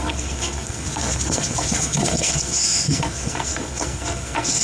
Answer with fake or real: fake